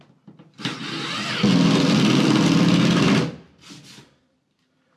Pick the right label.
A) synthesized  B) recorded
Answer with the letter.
B